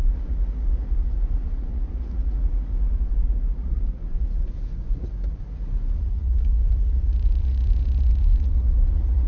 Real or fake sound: fake